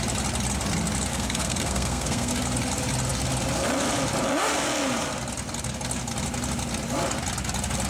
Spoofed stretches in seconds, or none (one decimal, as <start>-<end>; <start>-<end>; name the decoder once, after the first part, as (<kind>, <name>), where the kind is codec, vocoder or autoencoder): 1.1-2.3 (codec, SNAC)